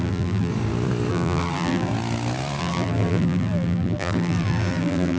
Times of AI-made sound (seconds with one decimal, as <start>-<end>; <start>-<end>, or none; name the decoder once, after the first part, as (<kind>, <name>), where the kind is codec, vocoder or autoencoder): 0.0-0.5 (vocoder, BigVGAN v2); 1.1-1.9; 2.6-5.2